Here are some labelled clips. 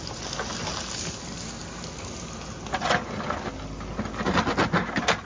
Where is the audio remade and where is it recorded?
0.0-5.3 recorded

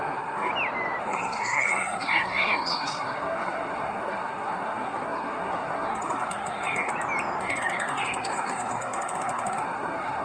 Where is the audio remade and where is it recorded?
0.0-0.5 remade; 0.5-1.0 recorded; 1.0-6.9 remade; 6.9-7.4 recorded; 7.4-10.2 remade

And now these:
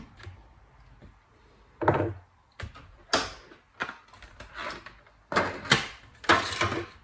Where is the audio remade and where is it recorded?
0.0-7.0 recorded

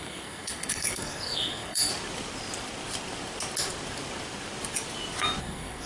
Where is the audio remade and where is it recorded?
0.0-1.9 remade; 1.9-5.4 recorded; 5.4-5.9 remade

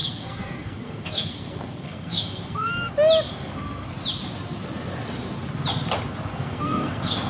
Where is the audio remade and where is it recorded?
0.0-2.9 remade; 2.9-3.3 recorded; 3.3-3.9 remade; 3.9-6.3 recorded; 6.3-7.3 remade

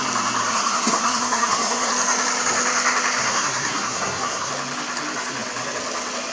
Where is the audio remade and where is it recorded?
0.0-0.4 recorded; 0.4-1.9 remade; 1.9-3.2 recorded; 3.2-4.5 remade; 4.5-6.3 recorded

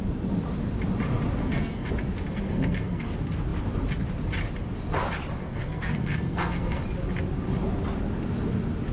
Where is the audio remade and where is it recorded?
0.0-1.4 recorded; 1.4-1.9 remade; 1.9-2.3 recorded; 2.3-3.1 remade; 3.1-5.4 recorded; 5.4-6.8 remade; 6.8-8.9 recorded